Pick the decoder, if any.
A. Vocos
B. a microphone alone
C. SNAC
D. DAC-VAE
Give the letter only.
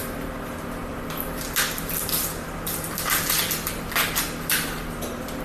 B